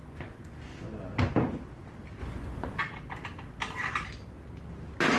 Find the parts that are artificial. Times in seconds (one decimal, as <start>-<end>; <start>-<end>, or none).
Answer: 0.0-0.6; 2.2-2.8